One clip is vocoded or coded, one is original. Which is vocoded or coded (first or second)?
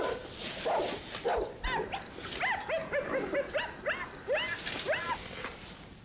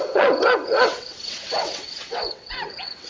second